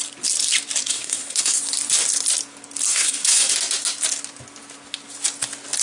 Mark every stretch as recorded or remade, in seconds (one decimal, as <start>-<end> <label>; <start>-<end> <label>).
0.0-0.8 recorded; 0.8-1.6 remade; 1.6-2.9 recorded; 2.9-3.5 remade; 3.5-5.8 recorded

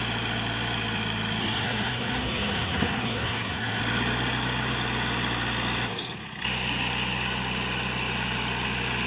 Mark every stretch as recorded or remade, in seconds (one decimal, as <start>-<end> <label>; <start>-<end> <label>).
0.0-1.4 recorded; 1.4-3.8 remade; 3.8-9.1 recorded

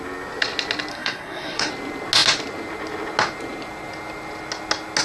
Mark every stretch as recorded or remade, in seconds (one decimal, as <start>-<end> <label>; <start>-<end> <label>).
0.0-0.9 recorded; 0.9-1.7 remade; 1.7-5.0 recorded